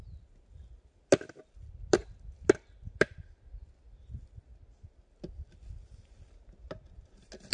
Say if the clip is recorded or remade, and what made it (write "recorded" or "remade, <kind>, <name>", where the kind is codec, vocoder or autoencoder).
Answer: recorded